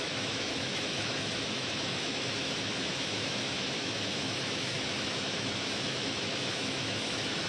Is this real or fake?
fake